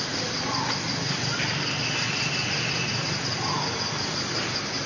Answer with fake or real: real